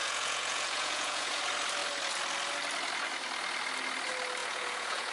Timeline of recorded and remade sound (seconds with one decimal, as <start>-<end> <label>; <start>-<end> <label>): 0.0-1.4 remade; 1.4-4.4 recorded; 4.4-5.1 remade